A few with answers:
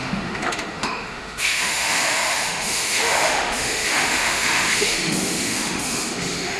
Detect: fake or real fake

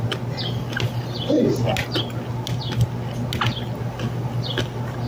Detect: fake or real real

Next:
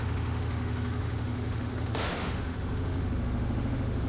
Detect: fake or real fake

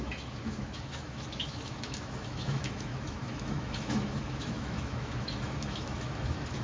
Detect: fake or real fake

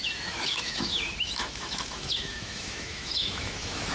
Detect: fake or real fake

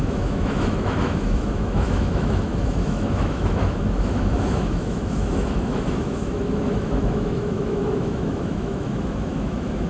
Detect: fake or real fake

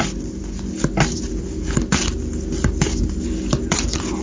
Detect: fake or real real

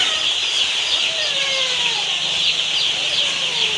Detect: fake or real real